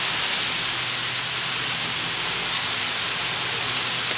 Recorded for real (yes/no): yes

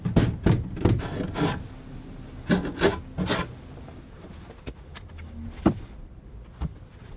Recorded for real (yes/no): yes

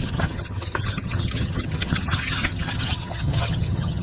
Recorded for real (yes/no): no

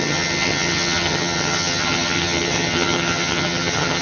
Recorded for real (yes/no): no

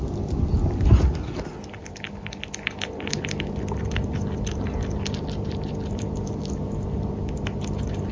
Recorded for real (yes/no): yes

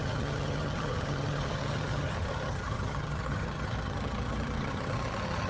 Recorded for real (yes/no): no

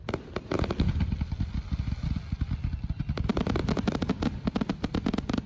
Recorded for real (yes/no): yes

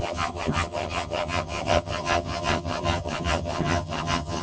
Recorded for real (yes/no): no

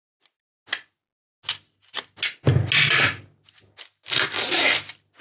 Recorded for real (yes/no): yes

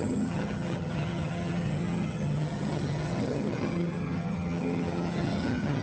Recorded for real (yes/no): no